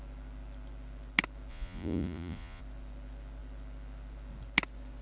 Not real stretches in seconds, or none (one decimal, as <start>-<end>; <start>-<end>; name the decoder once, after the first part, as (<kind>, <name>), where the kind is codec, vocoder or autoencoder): 1.5-2.6 (vocoder, Vocos)